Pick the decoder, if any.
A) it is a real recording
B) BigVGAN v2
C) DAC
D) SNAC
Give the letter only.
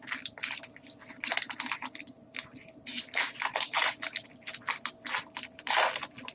B